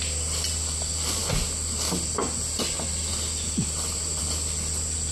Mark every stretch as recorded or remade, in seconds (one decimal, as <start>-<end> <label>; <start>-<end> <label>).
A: 0.0-5.1 recorded